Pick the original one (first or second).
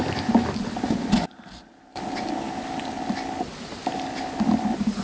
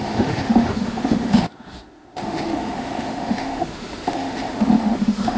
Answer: first